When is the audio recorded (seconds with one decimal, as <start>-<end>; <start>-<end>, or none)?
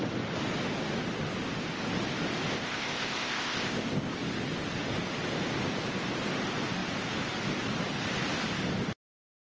0.0-2.5; 4.1-9.5